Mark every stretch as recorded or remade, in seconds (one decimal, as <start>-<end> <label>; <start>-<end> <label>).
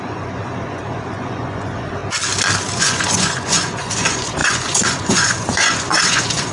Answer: 0.0-2.0 remade; 2.0-2.7 recorded; 2.7-6.5 remade